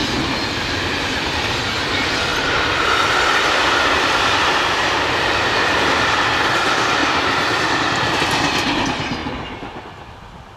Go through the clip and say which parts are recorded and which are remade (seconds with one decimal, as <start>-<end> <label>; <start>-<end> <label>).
0.0-2.3 recorded; 2.3-5.4 remade; 5.4-7.0 recorded; 7.0-8.2 remade; 8.2-10.6 recorded